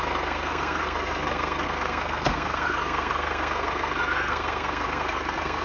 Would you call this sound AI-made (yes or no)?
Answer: yes